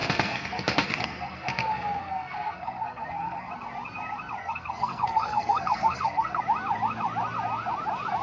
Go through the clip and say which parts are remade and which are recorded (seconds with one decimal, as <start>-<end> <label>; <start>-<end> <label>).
0.0-3.5 remade; 3.5-4.4 recorded; 4.4-6.4 remade; 6.4-8.2 recorded